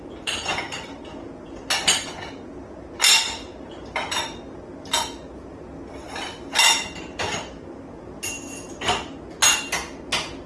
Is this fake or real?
real